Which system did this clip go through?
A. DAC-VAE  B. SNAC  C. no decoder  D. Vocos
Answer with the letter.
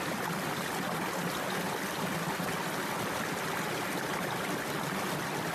C